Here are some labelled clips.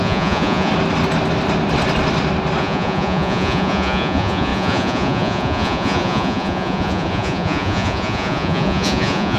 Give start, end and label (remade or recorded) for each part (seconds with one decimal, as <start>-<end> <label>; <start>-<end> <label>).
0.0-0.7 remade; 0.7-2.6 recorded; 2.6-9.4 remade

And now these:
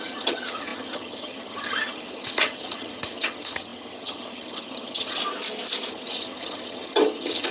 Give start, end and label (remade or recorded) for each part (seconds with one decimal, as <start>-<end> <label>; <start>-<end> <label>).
0.0-5.2 remade; 5.2-5.9 recorded; 5.9-7.5 remade

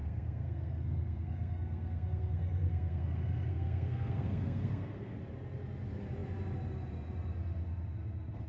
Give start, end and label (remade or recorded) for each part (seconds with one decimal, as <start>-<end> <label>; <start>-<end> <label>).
0.0-5.1 remade; 5.1-8.5 recorded

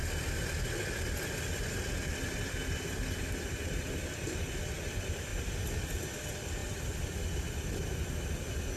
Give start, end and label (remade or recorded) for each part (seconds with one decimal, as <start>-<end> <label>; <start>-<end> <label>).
0.0-5.3 recorded; 5.3-6.0 remade; 6.0-8.8 recorded

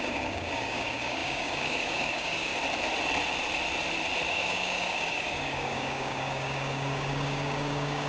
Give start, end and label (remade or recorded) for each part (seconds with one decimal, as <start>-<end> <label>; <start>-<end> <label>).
0.0-2.5 remade; 2.5-4.3 recorded; 4.3-8.1 remade

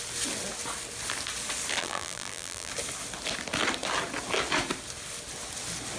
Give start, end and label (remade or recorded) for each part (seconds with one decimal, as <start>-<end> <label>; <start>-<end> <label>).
0.0-1.8 recorded; 1.8-2.7 remade; 2.7-6.0 recorded

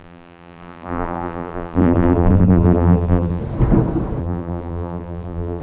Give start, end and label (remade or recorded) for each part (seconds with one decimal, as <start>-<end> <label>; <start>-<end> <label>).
0.0-3.4 remade; 3.4-4.2 recorded; 4.2-5.6 remade